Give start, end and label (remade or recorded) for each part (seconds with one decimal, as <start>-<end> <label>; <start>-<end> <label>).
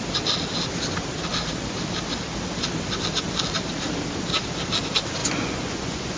0.0-5.2 recorded; 5.2-6.2 remade